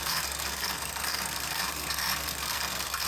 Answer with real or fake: fake